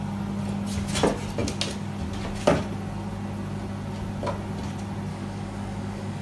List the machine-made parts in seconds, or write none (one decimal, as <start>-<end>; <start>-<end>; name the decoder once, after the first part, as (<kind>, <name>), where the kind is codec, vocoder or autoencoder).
5.1-6.2 (codec, DAC)